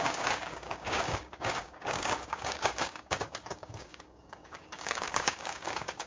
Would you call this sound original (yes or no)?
no